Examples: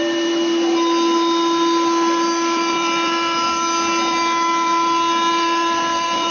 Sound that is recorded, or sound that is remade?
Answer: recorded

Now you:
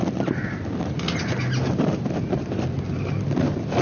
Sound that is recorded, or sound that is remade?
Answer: recorded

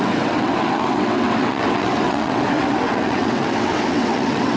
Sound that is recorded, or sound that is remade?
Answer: remade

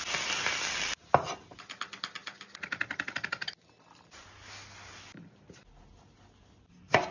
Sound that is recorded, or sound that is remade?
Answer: recorded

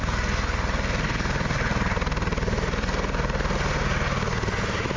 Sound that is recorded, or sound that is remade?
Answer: recorded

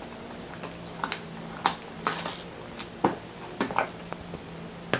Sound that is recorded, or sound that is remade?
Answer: recorded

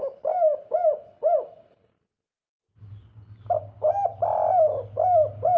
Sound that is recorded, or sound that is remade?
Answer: recorded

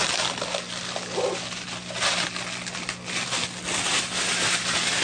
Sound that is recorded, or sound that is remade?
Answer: recorded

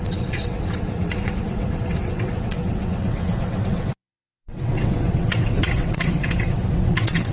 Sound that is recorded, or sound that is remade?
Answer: remade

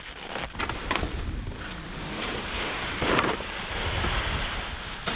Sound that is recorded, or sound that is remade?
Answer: recorded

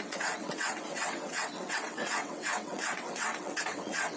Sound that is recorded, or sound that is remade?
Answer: remade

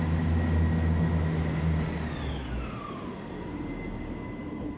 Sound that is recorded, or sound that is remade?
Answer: recorded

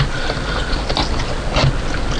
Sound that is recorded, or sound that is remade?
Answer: recorded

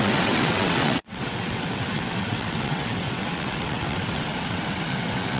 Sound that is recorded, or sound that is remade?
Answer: remade